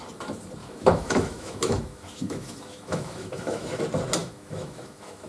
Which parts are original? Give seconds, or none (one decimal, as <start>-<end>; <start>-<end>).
0.0-0.6; 3.8-4.2